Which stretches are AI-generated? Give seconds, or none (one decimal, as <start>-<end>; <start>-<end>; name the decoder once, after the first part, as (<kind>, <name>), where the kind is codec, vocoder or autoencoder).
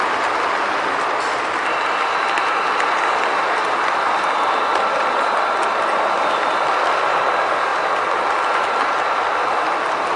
none